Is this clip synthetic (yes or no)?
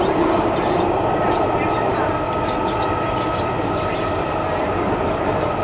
no